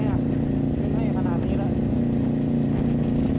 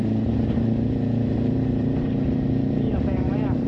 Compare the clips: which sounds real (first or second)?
first